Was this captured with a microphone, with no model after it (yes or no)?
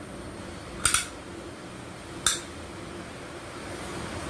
yes